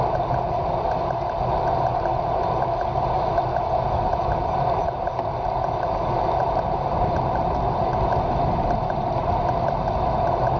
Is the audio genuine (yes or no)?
yes